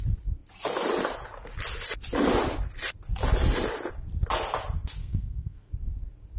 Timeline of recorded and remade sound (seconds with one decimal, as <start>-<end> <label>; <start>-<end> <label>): 0.0-5.0 recorded; 5.0-5.7 remade; 5.7-6.4 recorded